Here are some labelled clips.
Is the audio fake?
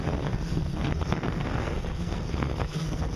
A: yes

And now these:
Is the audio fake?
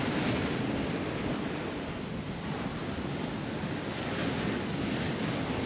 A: no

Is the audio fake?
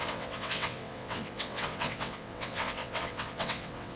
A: yes